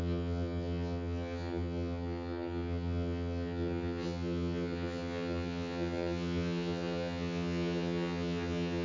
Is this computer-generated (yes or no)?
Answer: yes